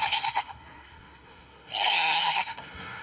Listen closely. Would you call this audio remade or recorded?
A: remade